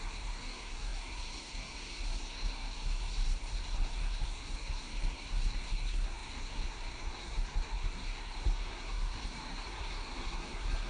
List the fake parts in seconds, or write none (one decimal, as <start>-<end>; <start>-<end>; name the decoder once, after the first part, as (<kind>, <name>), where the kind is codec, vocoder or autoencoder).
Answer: 0.0-10.9 (codec, SNAC)